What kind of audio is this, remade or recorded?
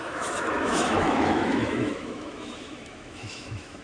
remade